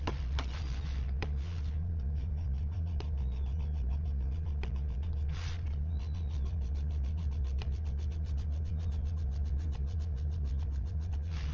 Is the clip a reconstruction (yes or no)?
yes